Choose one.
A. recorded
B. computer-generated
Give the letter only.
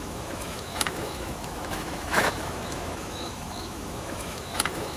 B